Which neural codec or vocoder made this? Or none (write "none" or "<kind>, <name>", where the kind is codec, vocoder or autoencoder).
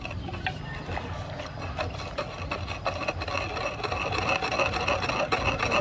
none